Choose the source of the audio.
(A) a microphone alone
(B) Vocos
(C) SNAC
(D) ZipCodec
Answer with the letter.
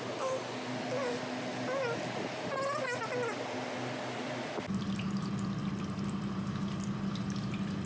A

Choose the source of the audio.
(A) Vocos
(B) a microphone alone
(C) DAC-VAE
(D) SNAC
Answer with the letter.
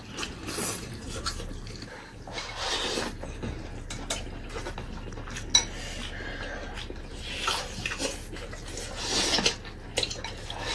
B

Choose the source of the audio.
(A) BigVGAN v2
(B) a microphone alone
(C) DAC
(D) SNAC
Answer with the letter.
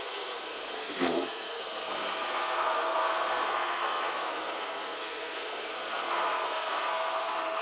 D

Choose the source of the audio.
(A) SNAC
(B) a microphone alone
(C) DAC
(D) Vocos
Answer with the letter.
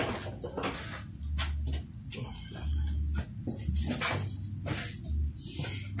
B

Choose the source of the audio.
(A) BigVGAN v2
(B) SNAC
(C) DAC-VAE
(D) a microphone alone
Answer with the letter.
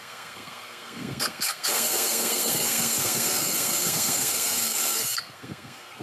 B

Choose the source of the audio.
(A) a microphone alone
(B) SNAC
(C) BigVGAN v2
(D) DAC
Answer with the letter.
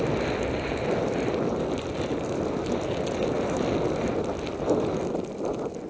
A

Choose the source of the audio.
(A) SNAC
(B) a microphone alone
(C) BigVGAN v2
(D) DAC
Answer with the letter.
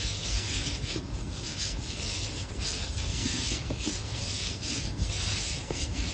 A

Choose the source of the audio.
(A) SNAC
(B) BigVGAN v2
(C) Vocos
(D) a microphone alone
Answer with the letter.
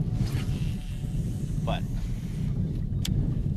D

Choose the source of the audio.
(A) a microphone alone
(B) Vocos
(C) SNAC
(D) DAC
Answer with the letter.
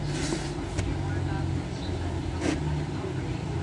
A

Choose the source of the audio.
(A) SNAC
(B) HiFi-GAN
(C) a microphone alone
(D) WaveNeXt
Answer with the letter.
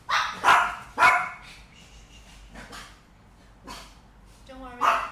C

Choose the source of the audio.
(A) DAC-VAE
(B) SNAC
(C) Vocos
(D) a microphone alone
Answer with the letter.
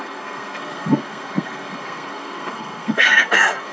B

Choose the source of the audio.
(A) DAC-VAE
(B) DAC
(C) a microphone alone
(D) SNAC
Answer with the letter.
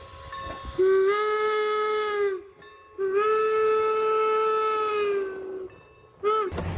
C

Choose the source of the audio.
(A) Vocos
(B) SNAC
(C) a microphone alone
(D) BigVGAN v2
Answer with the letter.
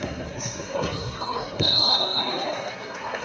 B